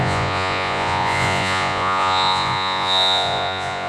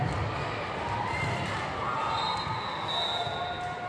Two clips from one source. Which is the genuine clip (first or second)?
second